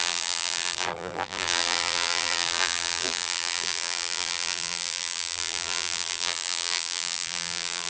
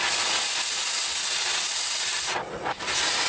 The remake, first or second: first